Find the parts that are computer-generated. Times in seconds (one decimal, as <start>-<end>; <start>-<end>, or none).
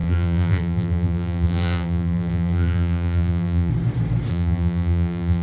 0.0-3.7; 4.3-5.4